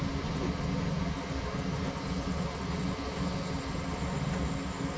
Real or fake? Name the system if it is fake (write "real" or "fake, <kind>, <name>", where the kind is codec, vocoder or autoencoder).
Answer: real